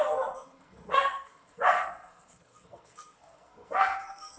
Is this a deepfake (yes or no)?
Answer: yes